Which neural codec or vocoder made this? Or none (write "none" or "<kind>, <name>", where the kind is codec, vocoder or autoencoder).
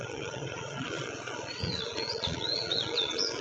vocoder, Vocos